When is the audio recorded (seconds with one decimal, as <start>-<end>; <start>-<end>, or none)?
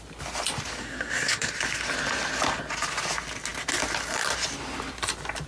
0.0-0.8; 1.5-5.5